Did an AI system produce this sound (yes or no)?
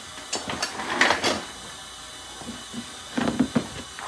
no